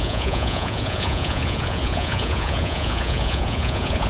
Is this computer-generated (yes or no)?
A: yes